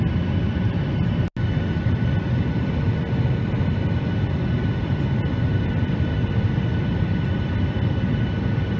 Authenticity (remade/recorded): recorded